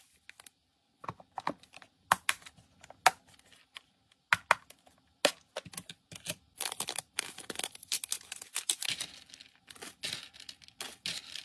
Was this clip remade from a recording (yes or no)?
no